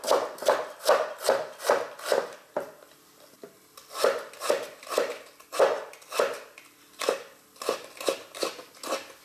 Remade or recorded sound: recorded